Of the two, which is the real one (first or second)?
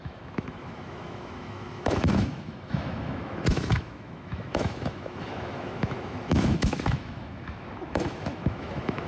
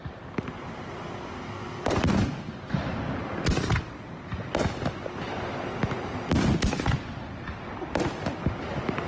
second